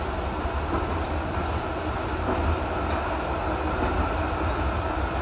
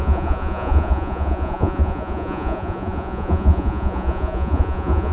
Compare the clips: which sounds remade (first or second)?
second